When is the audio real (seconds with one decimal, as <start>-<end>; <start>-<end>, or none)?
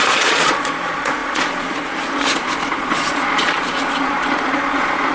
none